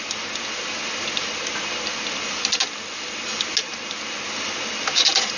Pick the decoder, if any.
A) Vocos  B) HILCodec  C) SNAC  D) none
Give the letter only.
D